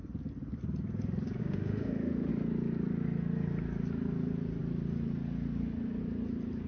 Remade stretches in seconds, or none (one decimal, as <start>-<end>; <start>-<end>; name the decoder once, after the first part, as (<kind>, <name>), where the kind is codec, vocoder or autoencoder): 1.4-2.3 (autoencoder, DAC-VAE)